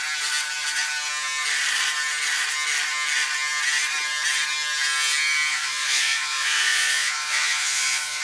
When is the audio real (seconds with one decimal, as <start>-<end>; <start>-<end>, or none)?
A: 0.0-5.5